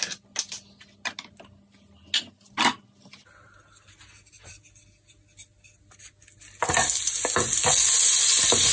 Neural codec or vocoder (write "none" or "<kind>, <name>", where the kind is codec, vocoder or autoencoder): none